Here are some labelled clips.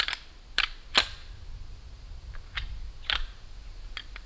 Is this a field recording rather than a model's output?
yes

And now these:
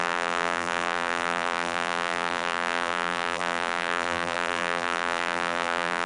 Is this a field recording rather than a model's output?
no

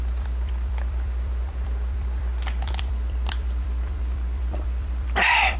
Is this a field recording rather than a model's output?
no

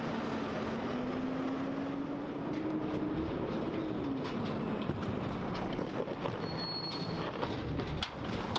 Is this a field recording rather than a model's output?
yes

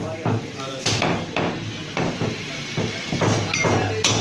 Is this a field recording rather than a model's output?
yes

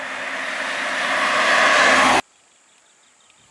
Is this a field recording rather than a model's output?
yes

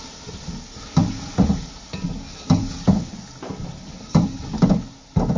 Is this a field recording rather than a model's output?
yes